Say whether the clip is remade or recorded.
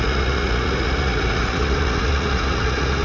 remade